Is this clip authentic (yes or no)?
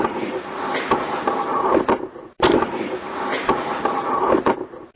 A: yes